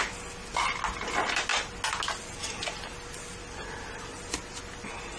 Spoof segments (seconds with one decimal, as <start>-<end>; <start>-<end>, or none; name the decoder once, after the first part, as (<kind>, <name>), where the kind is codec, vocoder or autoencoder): none